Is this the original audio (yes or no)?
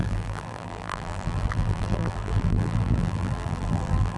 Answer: no